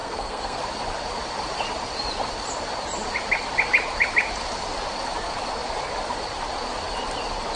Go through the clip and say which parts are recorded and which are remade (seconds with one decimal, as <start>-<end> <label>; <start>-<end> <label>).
0.0-0.6 remade; 0.6-7.6 recorded